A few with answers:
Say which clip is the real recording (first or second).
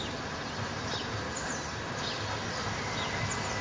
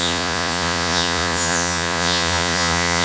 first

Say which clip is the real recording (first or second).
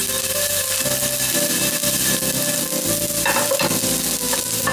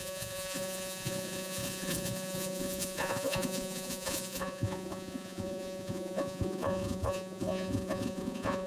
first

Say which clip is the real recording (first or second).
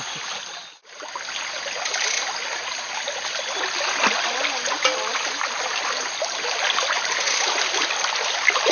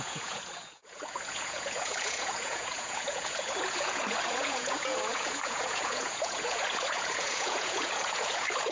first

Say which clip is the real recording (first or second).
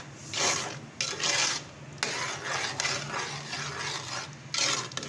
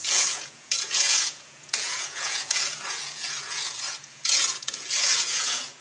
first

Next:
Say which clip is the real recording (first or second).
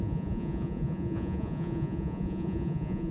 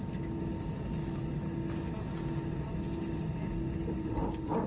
second